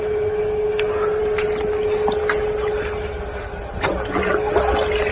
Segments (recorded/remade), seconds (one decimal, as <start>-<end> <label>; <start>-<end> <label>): 0.0-5.1 recorded